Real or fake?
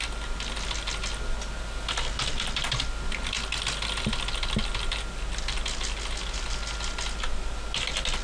real